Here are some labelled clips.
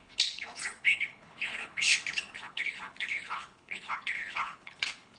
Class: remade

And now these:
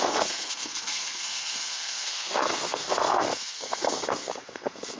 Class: remade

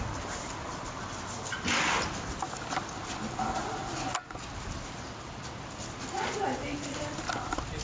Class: recorded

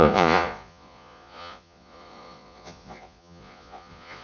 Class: remade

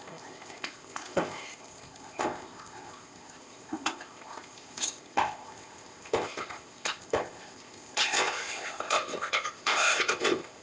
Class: remade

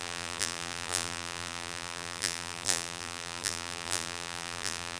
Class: remade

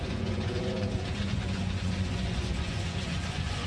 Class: remade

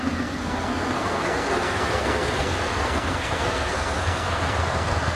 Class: remade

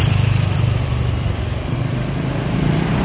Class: remade